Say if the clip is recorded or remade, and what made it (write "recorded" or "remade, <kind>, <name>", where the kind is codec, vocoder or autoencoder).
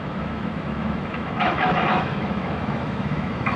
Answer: remade, autoencoder, DAC-VAE